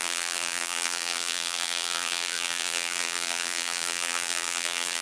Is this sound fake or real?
fake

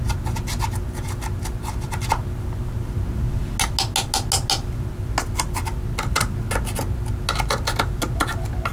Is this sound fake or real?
real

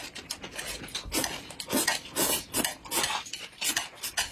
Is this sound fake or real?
real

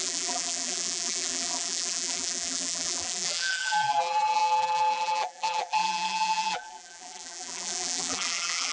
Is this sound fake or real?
fake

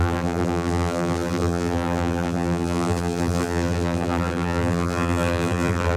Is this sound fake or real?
fake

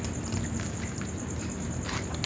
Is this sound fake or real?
real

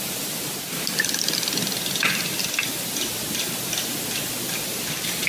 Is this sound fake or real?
fake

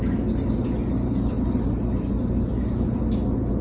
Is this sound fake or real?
real